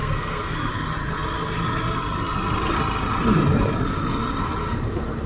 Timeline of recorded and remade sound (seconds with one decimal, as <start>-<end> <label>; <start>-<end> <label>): 0.0-0.7 remade; 0.7-5.3 recorded